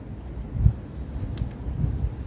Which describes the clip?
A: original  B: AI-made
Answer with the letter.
A